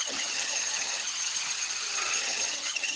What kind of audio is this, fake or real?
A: fake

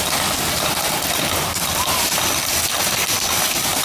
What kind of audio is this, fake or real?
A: real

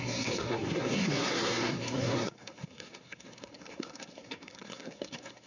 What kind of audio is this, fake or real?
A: fake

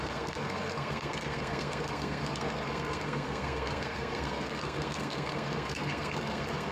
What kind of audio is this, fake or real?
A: fake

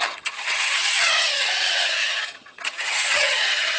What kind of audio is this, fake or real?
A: fake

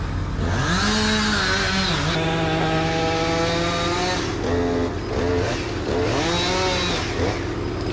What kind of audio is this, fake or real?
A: real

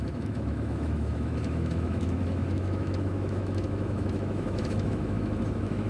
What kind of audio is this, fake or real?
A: fake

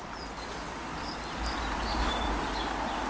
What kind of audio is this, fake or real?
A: real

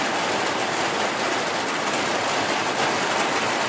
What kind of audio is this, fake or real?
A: real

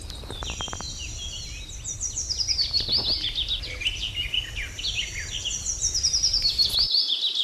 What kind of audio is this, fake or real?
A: real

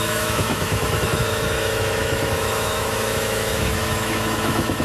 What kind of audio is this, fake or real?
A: fake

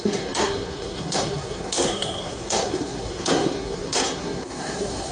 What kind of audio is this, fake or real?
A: fake